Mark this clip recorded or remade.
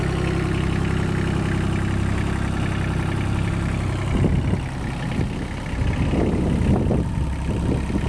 recorded